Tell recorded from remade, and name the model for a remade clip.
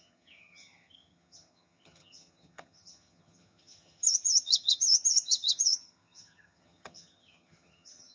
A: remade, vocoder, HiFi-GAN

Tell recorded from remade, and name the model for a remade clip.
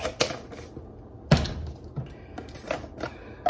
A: recorded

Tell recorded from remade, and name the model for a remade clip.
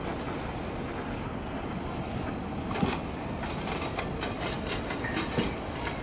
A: recorded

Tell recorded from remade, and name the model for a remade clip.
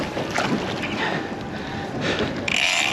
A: recorded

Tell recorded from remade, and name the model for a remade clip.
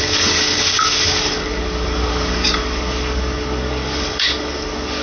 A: remade, codec, DAC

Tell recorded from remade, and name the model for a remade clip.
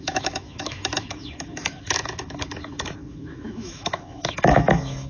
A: remade, autoencoder, DAC-VAE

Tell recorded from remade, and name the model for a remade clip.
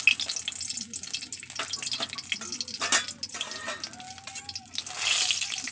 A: recorded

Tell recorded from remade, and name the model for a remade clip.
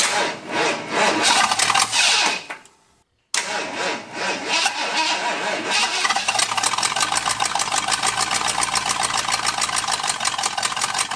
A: recorded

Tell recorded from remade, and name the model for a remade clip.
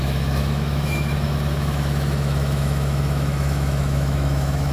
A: remade, autoencoder, DAC-VAE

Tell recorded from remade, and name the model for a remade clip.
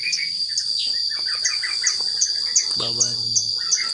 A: recorded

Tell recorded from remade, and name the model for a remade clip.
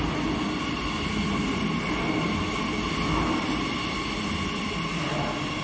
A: recorded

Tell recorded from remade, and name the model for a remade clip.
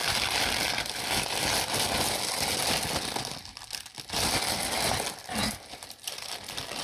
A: recorded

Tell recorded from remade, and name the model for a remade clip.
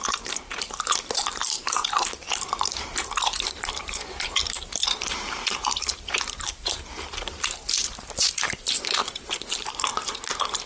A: remade, vocoder, BigVGAN v2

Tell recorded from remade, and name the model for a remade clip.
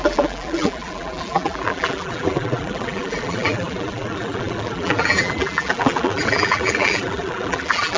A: remade, vocoder, BigVGAN v2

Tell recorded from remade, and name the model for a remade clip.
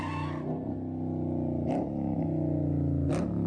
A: recorded